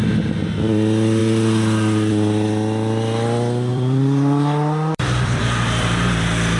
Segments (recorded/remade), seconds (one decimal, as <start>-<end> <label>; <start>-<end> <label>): 0.0-1.2 recorded; 1.2-2.1 remade; 2.1-3.7 recorded; 3.7-5.4 remade; 5.4-6.6 recorded